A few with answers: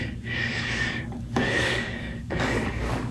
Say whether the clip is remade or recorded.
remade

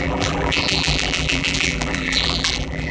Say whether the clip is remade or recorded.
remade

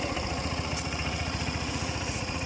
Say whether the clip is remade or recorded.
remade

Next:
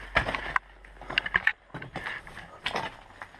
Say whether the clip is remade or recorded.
recorded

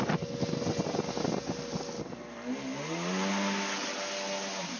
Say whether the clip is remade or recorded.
recorded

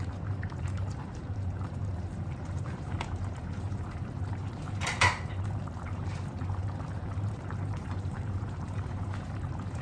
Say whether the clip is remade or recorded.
remade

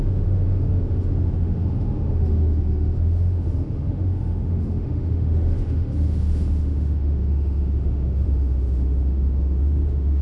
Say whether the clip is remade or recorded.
remade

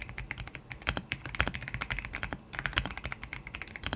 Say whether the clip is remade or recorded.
recorded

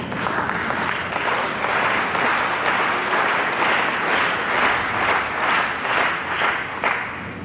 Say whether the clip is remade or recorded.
recorded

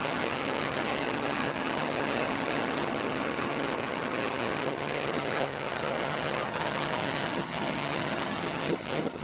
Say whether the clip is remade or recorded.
remade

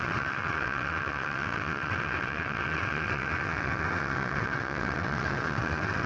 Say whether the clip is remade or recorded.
remade